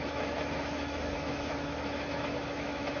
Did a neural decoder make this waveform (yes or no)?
yes